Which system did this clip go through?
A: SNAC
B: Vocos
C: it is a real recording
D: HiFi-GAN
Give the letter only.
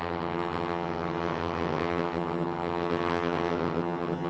D